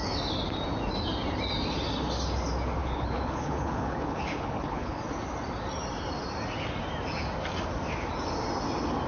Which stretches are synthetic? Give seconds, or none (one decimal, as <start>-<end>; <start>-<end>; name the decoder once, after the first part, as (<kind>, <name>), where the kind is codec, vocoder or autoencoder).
2.8-5.0 (codec, HILCodec)